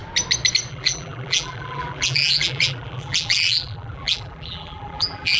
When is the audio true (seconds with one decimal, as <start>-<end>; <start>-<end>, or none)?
0.0-0.7